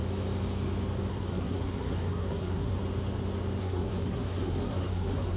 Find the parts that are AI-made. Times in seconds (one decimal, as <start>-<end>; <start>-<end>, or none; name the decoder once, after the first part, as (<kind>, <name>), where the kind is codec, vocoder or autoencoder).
1.1-2.8 (codec, SNAC); 3.6-5.4